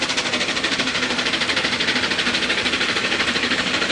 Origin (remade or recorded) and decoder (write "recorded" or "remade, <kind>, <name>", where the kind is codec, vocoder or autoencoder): remade, vocoder, BigVGAN v2